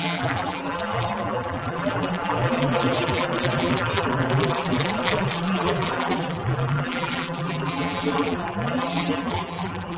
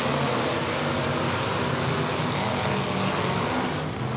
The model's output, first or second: first